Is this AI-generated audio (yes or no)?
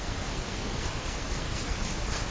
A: yes